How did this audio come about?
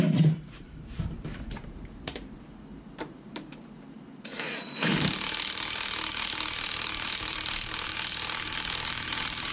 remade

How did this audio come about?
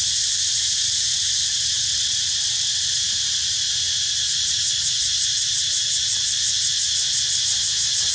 remade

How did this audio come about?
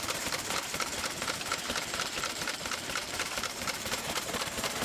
remade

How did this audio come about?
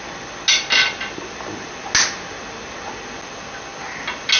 recorded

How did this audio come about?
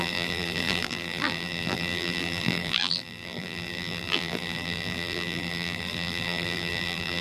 remade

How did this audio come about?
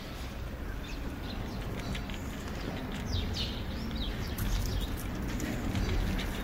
recorded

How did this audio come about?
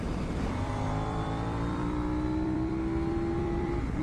remade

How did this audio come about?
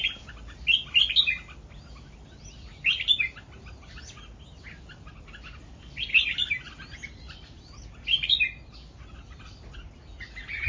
recorded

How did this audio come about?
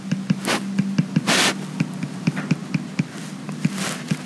recorded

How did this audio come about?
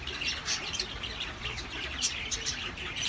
remade